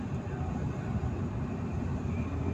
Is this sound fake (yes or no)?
no